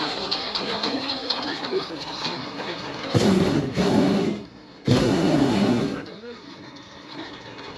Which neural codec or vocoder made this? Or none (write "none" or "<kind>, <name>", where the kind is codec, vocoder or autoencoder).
codec, SNAC